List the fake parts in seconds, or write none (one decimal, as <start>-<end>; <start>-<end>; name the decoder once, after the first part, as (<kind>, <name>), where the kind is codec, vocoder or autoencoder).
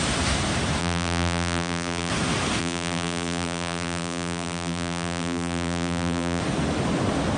0.8-2.1 (vocoder, BigVGAN v2); 2.6-6.4